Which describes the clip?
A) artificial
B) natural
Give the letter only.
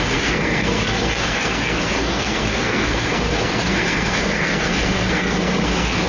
A